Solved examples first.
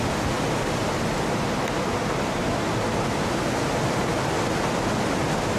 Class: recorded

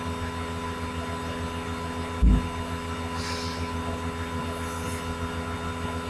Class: recorded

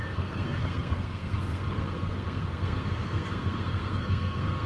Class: remade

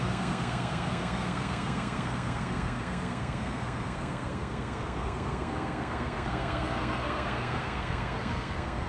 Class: remade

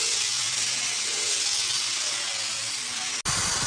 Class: recorded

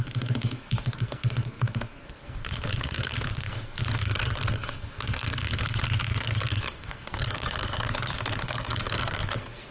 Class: remade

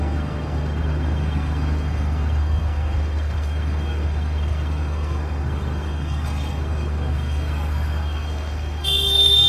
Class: remade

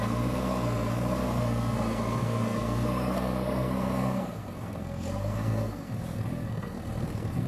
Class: remade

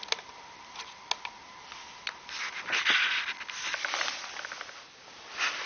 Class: recorded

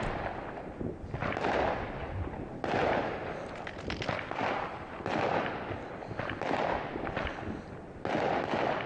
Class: recorded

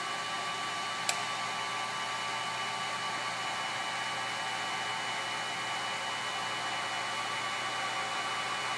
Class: recorded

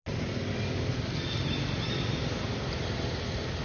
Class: recorded